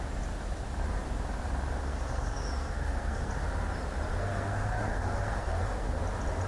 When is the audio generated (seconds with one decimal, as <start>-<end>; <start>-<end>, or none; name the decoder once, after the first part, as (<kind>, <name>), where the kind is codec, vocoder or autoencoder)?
1.8-3.3 (codec, SNAC); 4.1-6.0